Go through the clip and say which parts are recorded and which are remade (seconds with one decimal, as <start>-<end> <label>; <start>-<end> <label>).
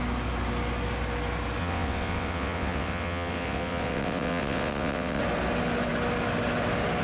0.0-1.6 recorded; 1.6-5.2 remade; 5.2-7.0 recorded